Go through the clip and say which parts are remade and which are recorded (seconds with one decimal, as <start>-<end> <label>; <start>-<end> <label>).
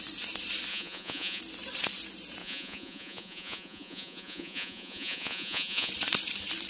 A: 0.0-0.7 recorded; 0.7-1.4 remade; 1.4-2.4 recorded; 2.4-5.9 remade; 5.9-6.7 recorded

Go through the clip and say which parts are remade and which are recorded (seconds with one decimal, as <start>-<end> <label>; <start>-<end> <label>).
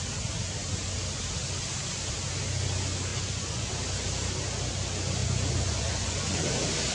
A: 0.0-3.1 recorded; 3.1-3.7 remade; 3.7-5.2 recorded; 5.2-6.5 remade; 6.5-6.9 recorded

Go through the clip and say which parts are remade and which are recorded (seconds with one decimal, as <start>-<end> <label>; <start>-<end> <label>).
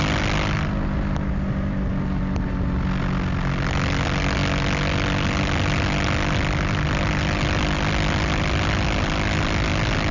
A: 0.0-10.1 recorded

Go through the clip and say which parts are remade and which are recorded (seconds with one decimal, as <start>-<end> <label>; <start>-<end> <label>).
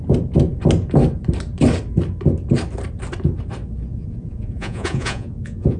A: 0.0-3.9 recorded; 3.9-5.8 remade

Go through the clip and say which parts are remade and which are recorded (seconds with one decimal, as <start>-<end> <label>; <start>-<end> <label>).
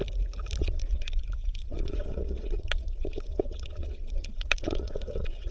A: 0.0-0.6 recorded; 0.6-5.5 remade